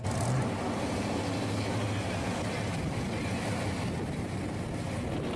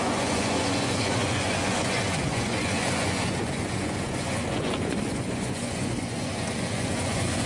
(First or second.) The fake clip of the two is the second